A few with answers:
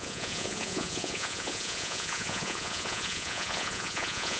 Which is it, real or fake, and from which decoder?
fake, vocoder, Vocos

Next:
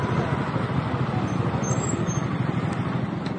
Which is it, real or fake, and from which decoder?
real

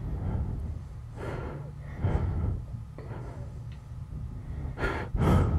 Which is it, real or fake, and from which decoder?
real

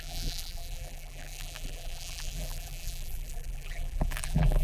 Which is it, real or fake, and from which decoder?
fake, vocoder, BigVGAN v2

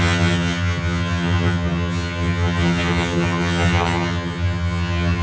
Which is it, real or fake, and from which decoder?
fake, vocoder, HiFi-GAN